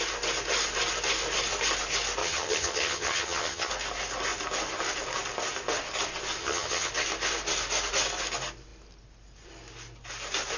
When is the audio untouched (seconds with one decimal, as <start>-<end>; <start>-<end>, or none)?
0.0-2.2; 3.7-6.4; 6.9-10.6